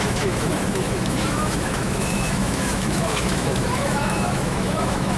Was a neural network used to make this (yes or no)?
yes